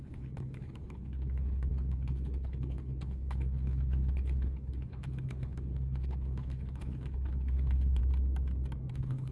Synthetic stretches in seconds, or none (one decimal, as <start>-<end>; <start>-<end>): 0.0-8.0; 8.9-9.3